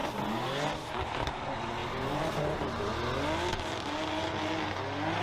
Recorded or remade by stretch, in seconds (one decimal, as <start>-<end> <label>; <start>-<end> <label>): 0.0-1.8 recorded; 1.8-2.9 remade; 2.9-5.2 recorded